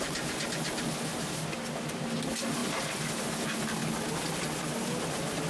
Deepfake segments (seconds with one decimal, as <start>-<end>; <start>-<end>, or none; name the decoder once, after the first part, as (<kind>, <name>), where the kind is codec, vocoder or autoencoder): none